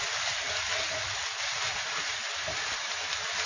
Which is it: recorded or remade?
recorded